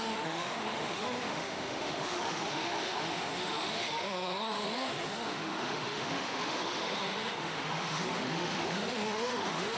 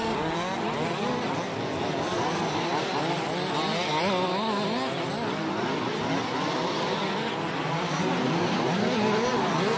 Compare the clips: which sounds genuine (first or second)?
second